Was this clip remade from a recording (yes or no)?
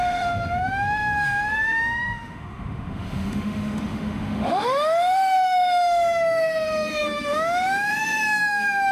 yes